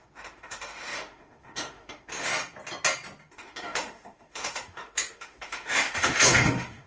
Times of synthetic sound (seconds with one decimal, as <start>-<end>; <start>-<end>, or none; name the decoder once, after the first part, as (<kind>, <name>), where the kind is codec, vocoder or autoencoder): 0.0-2.3 (autoencoder, DAC-VAE); 3.3-6.9

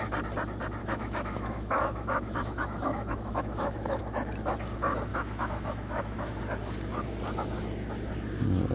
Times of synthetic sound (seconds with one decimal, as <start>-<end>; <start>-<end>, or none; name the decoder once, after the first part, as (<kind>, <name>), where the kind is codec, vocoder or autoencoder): 0.8-4.0 (autoencoder, DAC-VAE); 5.1-6.4

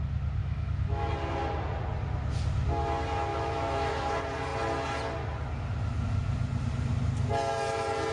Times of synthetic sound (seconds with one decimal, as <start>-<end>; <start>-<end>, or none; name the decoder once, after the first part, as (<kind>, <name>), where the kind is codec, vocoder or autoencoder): 0.4-1.1 (autoencoder, DAC-VAE); 3.3-4.1

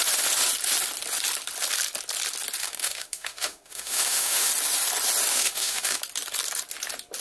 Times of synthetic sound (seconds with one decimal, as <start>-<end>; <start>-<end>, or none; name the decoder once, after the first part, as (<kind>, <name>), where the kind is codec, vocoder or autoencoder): 2.6-4.5 (autoencoder, DAC-VAE); 5.3-6.0